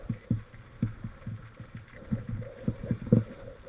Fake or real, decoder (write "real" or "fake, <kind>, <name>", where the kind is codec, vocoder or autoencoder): real